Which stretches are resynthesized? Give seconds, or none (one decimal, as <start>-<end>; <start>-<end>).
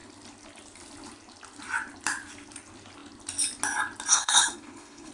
4.1-5.1